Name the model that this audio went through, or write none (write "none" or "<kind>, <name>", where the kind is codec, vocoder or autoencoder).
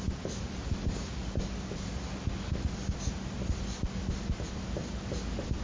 none